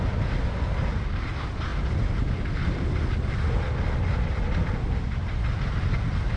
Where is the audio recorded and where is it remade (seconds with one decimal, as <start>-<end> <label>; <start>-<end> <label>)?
0.0-6.4 recorded